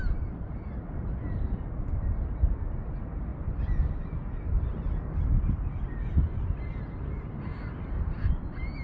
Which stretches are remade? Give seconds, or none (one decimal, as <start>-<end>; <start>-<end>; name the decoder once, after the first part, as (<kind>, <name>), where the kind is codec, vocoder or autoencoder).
3.3-6.8 (vocoder, BigVGAN v2); 7.5-8.3

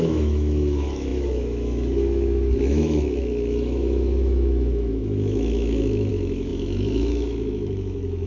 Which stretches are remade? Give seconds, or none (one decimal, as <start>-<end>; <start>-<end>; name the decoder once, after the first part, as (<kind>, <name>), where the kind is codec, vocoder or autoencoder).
0.0-8.3 (autoencoder, DAC-VAE)